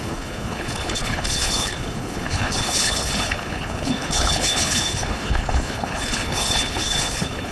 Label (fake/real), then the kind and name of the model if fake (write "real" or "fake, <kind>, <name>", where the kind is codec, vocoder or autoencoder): fake, codec, HILCodec